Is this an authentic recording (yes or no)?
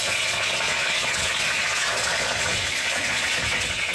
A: no